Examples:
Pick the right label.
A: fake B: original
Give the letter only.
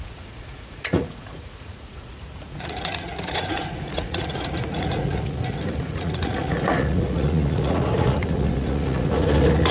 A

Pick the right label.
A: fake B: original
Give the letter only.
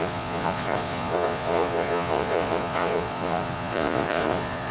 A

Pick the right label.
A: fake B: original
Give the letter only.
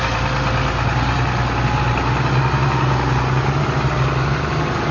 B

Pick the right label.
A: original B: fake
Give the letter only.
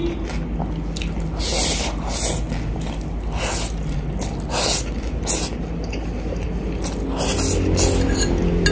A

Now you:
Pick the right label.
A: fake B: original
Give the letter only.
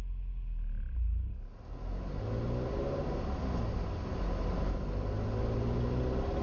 B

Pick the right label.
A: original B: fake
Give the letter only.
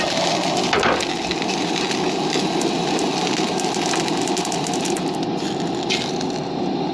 A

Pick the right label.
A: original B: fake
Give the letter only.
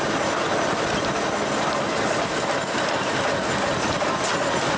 A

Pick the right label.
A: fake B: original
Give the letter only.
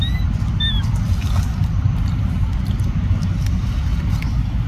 B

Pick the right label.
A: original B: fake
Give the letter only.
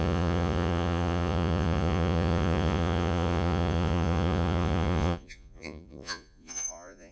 B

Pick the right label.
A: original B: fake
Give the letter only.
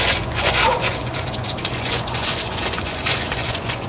B